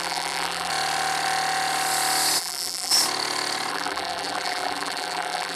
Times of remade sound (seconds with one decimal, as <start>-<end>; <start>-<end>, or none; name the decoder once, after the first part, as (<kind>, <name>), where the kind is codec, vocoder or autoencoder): 0.0-0.7 (vocoder, BigVGAN v2); 2.4-2.9; 3.7-5.6